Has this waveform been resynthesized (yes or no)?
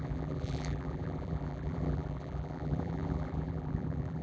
yes